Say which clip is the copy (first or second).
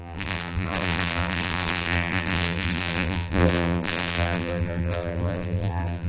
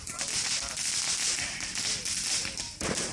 first